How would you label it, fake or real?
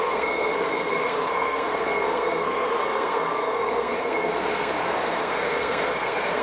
fake